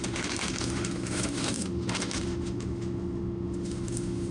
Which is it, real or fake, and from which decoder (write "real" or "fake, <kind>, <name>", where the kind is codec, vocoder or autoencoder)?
fake, autoencoder, DAC-VAE